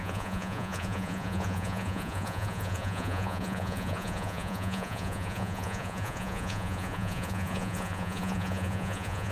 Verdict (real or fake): fake